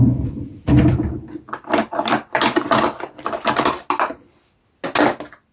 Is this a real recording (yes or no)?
yes